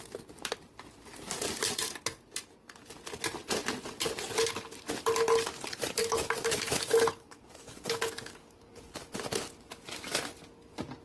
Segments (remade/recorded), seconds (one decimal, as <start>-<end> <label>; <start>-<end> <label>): 0.0-6.0 recorded; 6.0-8.9 remade; 8.9-11.0 recorded